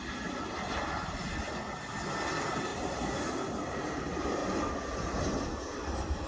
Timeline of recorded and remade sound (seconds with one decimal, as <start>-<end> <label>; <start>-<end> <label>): 0.0-2.7 recorded; 2.7-3.9 remade; 3.9-6.3 recorded